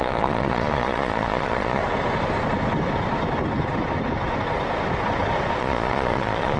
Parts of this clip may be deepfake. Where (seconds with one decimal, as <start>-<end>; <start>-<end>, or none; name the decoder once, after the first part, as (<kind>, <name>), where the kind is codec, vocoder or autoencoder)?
0.0-1.8 (vocoder, Vocos); 5.6-6.6